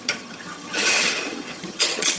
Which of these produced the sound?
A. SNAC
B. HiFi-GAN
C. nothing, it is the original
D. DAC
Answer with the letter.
B